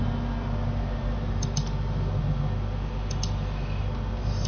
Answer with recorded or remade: recorded